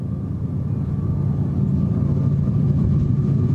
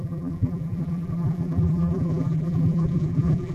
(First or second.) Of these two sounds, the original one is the first